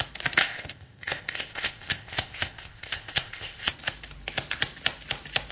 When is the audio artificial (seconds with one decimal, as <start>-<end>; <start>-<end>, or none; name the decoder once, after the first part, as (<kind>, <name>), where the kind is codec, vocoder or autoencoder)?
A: 0.4-3.7 (codec, ZipCodec)